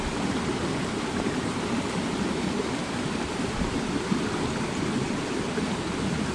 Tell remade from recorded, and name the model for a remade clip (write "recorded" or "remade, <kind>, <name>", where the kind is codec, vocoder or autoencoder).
remade, vocoder, BigVGAN v2